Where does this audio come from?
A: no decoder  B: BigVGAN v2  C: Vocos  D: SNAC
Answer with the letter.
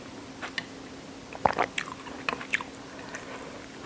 A